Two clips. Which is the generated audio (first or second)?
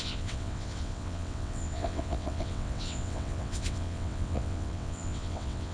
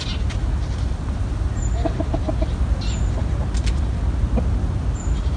first